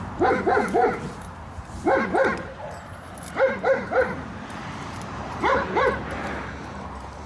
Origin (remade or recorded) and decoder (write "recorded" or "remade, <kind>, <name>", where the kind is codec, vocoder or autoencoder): remade, vocoder, BigVGAN v2